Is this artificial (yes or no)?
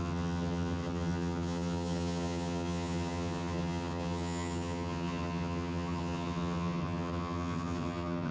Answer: yes